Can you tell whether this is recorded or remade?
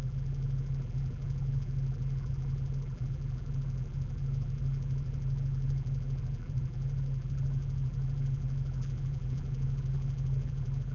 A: remade